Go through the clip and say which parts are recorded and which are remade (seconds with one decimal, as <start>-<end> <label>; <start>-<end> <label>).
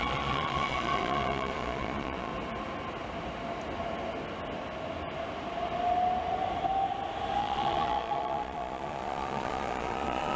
0.0-2.3 remade; 2.3-7.4 recorded; 7.4-10.4 remade